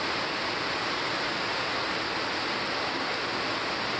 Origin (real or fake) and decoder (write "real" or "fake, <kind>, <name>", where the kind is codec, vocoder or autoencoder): real